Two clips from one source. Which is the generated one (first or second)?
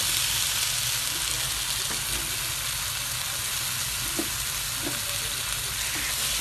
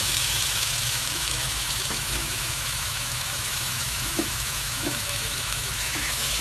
second